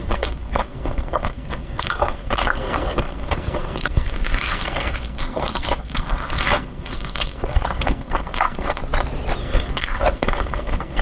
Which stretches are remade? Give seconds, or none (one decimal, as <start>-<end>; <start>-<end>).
0.0-8.8; 9.4-11.0